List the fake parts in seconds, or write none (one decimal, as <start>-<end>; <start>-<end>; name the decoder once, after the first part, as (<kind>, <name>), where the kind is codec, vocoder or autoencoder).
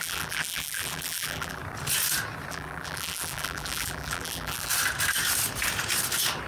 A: 0.0-1.6 (vocoder, BigVGAN v2); 2.5-4.7